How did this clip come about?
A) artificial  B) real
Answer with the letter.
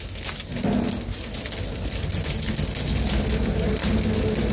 B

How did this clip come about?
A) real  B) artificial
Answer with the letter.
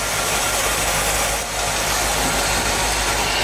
A